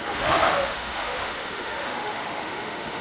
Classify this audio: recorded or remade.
remade